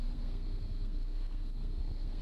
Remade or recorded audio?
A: remade